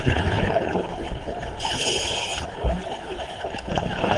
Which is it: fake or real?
fake